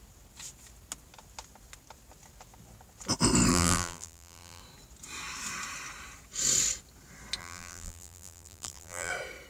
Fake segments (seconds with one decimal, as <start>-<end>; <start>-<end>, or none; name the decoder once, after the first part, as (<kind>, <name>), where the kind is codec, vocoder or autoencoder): 3.5-4.6 (vocoder, BigVGAN v2); 7.4-9.1